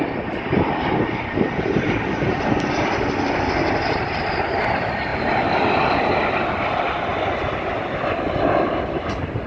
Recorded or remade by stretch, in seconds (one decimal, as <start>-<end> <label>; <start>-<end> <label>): 0.0-5.1 remade; 5.1-5.7 recorded; 5.7-7.1 remade; 7.1-7.9 recorded; 7.9-9.5 remade